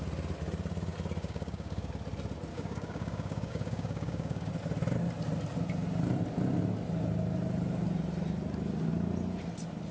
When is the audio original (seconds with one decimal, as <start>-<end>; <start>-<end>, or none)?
0.0-1.2; 1.9-2.5; 4.5-9.9